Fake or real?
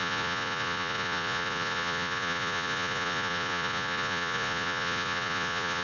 fake